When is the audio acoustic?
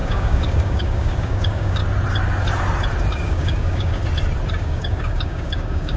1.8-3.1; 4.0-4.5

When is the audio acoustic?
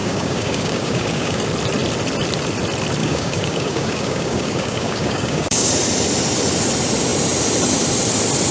1.4-3.0; 5.7-8.5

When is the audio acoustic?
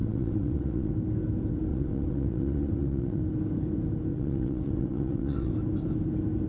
0.9-1.7; 3.2-4.1; 5.5-6.5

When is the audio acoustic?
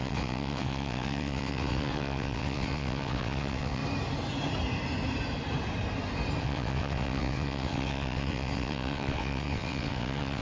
3.8-6.4